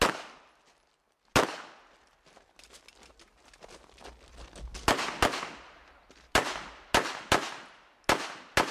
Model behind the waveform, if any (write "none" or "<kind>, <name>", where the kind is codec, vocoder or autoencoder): none